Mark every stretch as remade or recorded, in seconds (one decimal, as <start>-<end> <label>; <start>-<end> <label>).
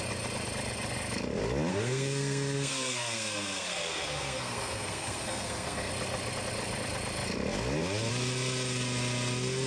0.0-1.7 recorded; 1.7-5.9 remade; 5.9-9.7 recorded